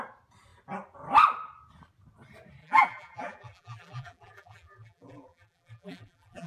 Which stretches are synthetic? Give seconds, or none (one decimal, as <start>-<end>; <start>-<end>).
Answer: 2.6-6.5